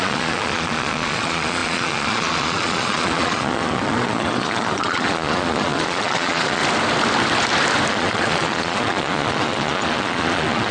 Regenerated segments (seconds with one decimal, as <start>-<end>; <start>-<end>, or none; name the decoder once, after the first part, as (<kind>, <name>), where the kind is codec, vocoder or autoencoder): 0.0-6.6 (vocoder, Vocos); 7.9-10.7